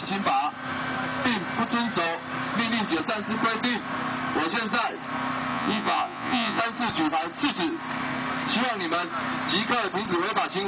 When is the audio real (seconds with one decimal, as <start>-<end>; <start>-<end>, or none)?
0.0-5.5; 6.6-10.7